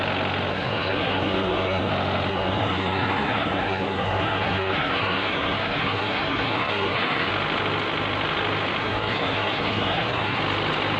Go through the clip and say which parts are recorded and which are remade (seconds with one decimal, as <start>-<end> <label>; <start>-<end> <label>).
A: 0.0-0.5 recorded; 0.5-1.9 remade; 1.9-2.3 recorded; 2.3-7.3 remade; 7.3-8.8 recorded; 8.8-10.4 remade; 10.4-11.0 recorded